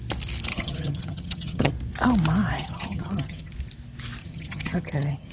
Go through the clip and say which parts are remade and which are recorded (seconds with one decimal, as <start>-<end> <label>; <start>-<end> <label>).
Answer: 0.0-0.5 recorded; 0.5-1.7 remade; 1.7-2.6 recorded; 2.6-3.5 remade; 3.5-4.2 recorded; 4.2-5.3 remade